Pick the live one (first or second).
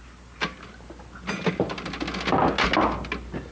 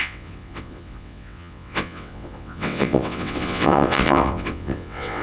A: first